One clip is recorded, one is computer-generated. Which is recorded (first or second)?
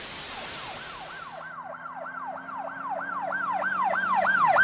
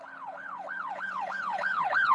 first